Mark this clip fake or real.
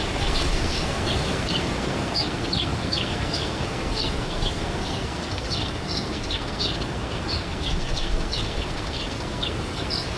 fake